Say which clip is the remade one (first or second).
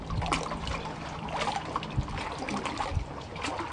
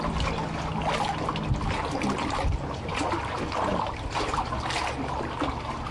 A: first